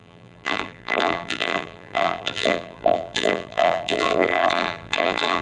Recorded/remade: remade